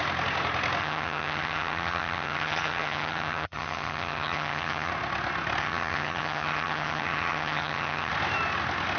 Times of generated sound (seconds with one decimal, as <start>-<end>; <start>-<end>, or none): 0.8-4.9; 5.6-8.1